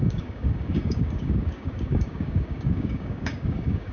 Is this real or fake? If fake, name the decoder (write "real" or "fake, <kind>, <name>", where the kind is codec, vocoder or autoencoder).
fake, codec, DAC